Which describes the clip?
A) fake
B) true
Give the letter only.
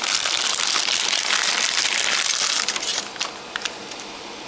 B